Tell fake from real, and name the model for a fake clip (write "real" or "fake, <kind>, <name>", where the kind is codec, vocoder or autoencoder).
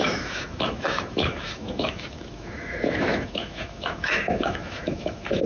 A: fake, autoencoder, DAC-VAE